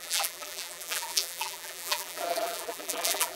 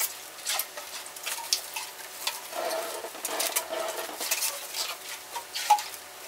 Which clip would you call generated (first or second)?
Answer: first